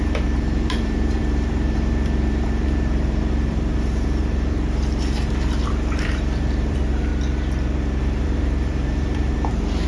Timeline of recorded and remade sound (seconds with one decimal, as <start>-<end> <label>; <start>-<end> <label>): 0.0-7.1 remade; 7.1-8.0 recorded; 8.0-9.9 remade